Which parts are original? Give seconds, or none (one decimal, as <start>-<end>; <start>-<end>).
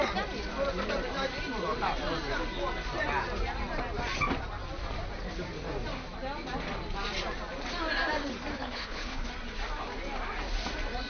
0.0-8.5; 9.3-11.1